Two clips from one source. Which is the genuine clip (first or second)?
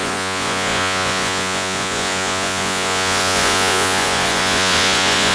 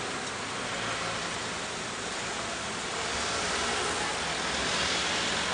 second